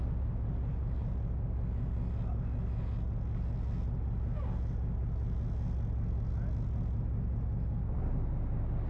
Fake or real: real